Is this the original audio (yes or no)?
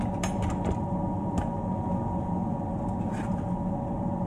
yes